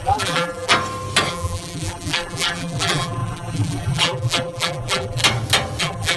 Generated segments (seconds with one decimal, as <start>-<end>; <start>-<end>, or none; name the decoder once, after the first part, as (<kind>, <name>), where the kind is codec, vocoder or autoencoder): 0.0-0.7 (vocoder, BigVGAN v2); 1.3-5.2; 5.8-6.2